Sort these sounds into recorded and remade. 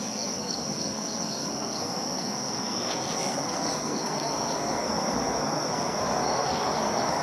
remade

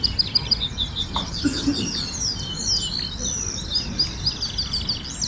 recorded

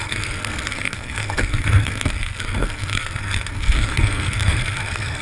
remade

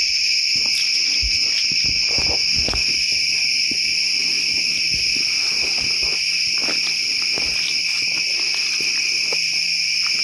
recorded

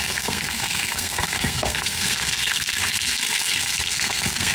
remade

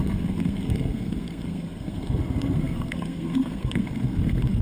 remade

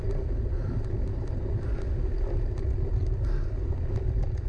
recorded